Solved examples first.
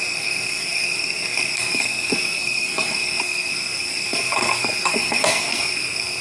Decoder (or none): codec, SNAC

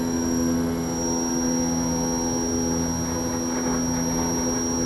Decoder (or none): none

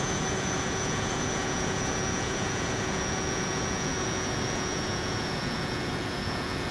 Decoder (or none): vocoder, Vocos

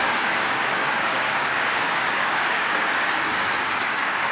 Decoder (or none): codec, DAC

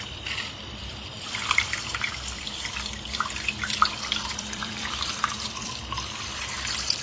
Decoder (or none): vocoder, BigVGAN v2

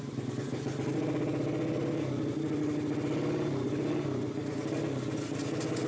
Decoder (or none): none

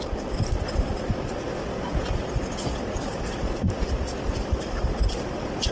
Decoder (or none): none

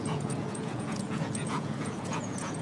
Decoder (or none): vocoder, Vocos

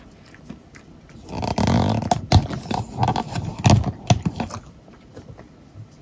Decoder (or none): none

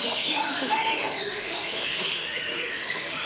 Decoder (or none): autoencoder, DAC-VAE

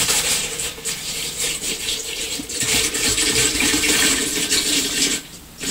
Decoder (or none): vocoder, BigVGAN v2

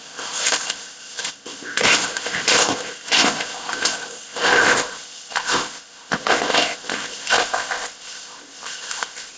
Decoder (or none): codec, ZipCodec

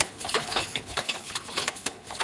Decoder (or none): codec, HILCodec